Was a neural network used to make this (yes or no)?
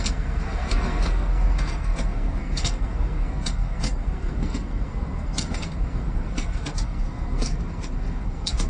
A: yes